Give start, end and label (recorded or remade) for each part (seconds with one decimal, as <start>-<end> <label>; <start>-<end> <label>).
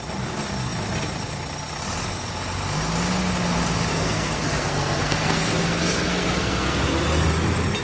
0.0-3.9 recorded; 3.9-6.8 remade; 6.8-7.8 recorded